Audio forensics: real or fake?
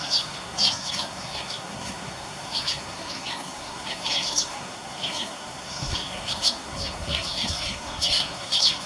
fake